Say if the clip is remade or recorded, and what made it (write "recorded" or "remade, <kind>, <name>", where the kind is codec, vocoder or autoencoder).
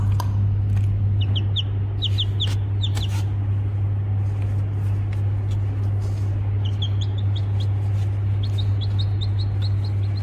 recorded